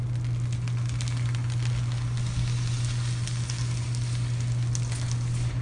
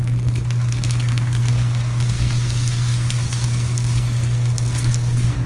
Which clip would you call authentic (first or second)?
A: first